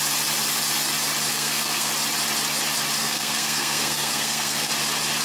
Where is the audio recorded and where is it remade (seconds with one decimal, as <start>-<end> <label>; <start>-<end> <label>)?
0.0-1.3 recorded; 1.3-1.9 remade; 1.9-3.0 recorded; 3.0-4.7 remade; 4.7-5.2 recorded